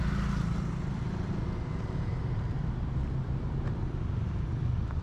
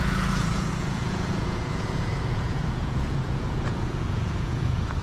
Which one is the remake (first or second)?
second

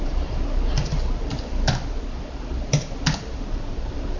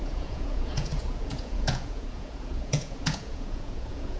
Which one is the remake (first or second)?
second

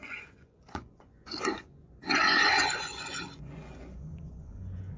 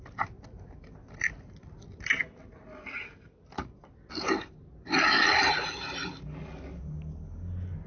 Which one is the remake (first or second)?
first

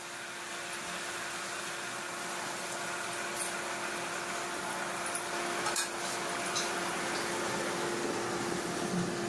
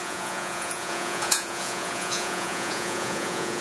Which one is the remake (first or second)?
second